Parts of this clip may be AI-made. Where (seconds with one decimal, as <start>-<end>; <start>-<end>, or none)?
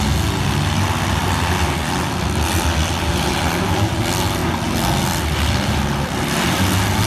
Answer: none